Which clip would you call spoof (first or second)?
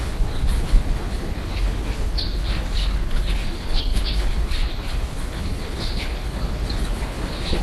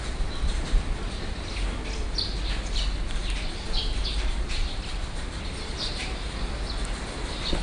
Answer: first